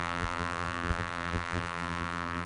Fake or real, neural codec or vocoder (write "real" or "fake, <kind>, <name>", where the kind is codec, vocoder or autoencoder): fake, vocoder, BigVGAN v2